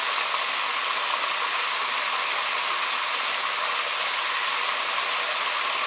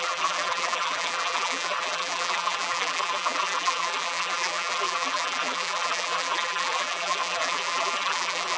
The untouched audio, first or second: first